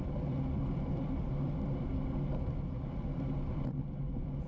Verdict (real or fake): fake